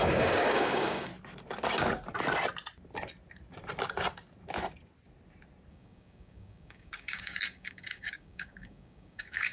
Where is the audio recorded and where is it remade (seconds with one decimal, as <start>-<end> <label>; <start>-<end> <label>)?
0.0-1.1 remade; 1.1-5.7 recorded; 5.7-9.5 remade

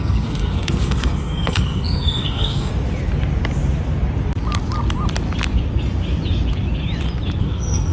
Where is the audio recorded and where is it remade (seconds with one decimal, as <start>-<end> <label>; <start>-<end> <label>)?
0.0-2.7 remade; 2.7-7.4 recorded; 7.4-7.9 remade

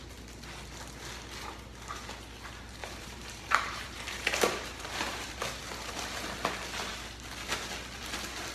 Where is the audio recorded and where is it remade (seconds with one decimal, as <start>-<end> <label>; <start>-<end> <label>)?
0.0-2.8 recorded; 2.8-5.3 remade; 5.3-8.5 recorded

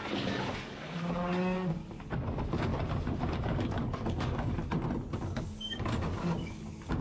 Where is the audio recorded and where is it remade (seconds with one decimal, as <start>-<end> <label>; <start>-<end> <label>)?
0.0-2.7 remade; 2.7-3.2 recorded; 3.2-4.6 remade; 4.6-5.2 recorded; 5.2-7.0 remade

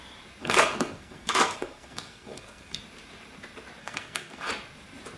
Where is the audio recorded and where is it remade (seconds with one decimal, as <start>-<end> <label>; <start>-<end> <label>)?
0.0-0.4 recorded; 0.4-2.8 remade; 2.8-3.8 recorded; 3.8-4.5 remade; 4.5-5.2 recorded

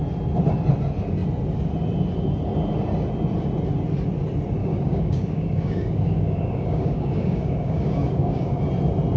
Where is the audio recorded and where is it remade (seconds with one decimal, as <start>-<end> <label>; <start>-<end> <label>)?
0.0-4.6 recorded; 4.6-8.6 remade; 8.6-9.2 recorded

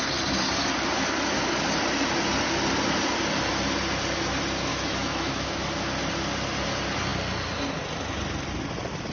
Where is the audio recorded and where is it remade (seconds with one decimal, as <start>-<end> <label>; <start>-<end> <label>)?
0.0-4.7 recorded; 4.7-5.6 remade; 5.6-9.1 recorded